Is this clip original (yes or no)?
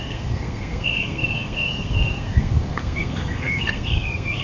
no